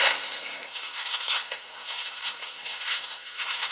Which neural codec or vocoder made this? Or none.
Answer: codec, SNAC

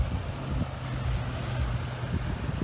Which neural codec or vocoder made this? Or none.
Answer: none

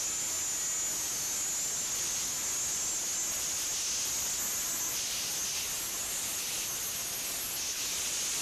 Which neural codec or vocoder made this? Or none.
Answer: none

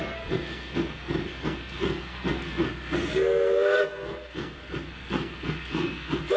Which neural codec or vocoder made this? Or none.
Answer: codec, SNAC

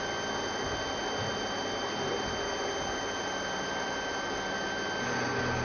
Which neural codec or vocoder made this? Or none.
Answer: none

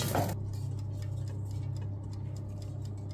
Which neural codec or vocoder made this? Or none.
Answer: none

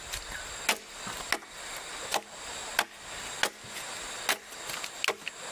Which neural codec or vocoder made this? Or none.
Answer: none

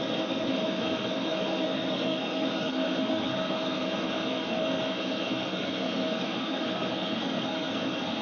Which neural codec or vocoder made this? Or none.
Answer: codec, SNAC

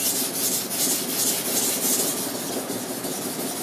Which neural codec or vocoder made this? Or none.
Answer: none